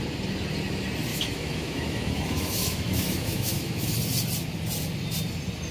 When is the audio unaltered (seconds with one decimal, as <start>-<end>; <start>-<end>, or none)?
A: 0.0-1.1; 3.9-5.7